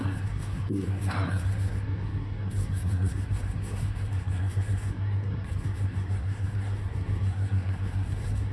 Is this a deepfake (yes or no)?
yes